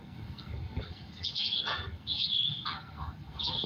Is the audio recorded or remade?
remade